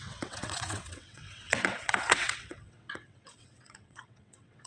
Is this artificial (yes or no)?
yes